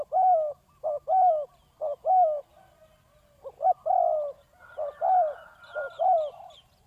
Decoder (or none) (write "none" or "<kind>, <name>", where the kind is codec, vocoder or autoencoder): none